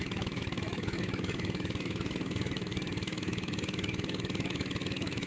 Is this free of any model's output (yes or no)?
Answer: no